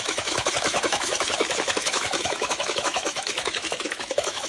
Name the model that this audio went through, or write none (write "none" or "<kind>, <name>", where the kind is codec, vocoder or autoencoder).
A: autoencoder, DAC-VAE